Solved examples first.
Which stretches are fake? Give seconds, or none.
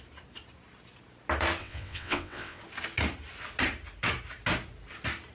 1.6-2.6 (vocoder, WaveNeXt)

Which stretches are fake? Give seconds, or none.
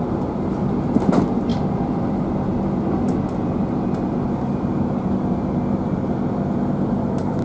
none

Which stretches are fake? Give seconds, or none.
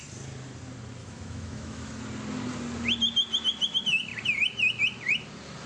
1.0-2.0 (autoencoder, DAC-VAE)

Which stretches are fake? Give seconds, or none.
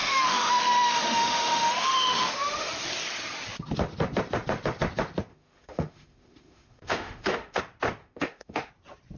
0.0-2.7 (autoencoder, DAC-VAE); 5.3-7.6; 8.0-8.7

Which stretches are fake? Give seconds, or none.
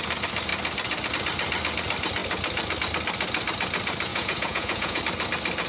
4.1-5.0 (vocoder, Vocos)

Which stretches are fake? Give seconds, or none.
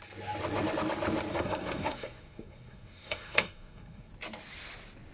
1.3-4.1 (codec, SNAC)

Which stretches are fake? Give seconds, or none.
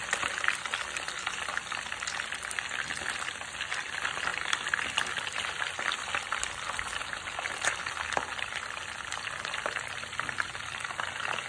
none